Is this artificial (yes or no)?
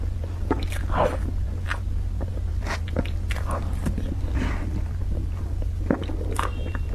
no